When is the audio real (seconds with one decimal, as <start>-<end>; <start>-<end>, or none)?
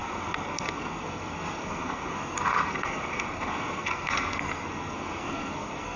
none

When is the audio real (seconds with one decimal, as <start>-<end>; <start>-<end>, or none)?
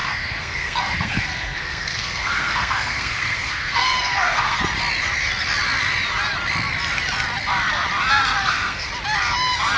4.6-8.4; 8.9-9.8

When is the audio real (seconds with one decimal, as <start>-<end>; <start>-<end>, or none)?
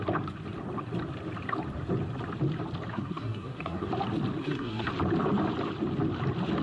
0.0-2.9; 3.9-4.4; 4.9-6.6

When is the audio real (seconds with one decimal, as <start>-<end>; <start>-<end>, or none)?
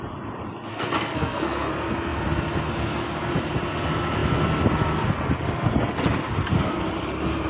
0.0-0.7; 1.7-7.5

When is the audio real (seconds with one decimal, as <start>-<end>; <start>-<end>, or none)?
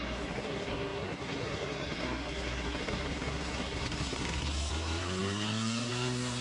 none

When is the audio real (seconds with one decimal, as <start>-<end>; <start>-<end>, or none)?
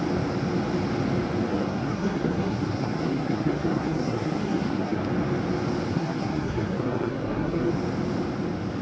0.0-1.5; 5.0-5.9; 7.7-8.8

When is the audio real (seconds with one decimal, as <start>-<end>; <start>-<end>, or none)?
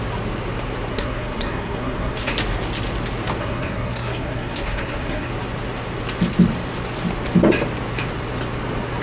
0.0-0.9; 2.3-3.4; 5.3-9.0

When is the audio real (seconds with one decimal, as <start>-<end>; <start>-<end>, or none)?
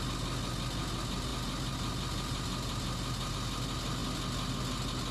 0.0-5.1